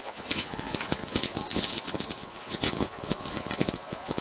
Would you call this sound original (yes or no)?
no